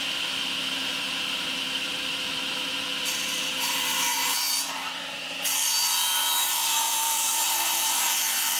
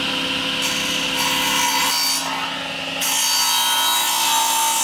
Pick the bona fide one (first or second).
second